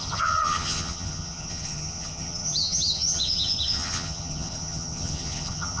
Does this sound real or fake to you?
fake